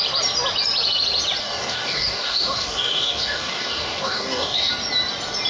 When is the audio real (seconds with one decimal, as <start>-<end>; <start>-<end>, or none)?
0.0-1.4; 4.7-5.5